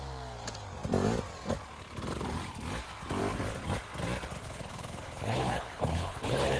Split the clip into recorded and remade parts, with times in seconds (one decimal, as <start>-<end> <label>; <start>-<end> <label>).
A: 0.0-4.4 recorded; 4.4-6.6 remade